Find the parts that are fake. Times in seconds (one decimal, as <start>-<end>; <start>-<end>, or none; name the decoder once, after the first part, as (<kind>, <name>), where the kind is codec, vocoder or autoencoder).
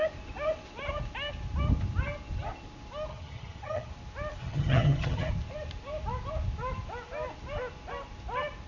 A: 3.1-3.9 (vocoder, HiFi-GAN); 4.4-5.3